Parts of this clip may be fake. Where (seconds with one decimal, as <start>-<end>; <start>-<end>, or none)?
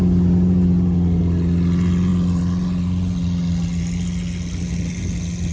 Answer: none